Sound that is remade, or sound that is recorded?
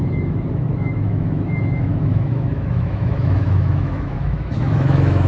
remade